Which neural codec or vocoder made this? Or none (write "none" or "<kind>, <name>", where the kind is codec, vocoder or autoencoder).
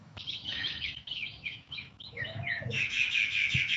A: autoencoder, DAC-VAE